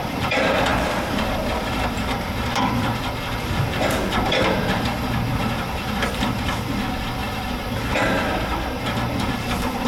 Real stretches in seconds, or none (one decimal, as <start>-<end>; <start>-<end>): 7.2-7.9